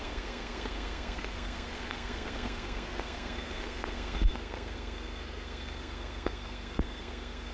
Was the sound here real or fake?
fake